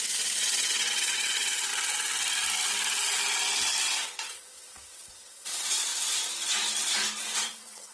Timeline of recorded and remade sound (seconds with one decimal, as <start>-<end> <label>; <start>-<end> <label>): 0.0-1.7 remade; 1.7-3.8 recorded; 3.8-5.9 remade; 5.9-7.2 recorded; 7.2-7.9 remade